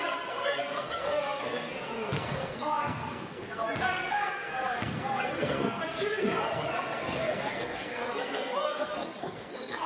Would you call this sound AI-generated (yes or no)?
yes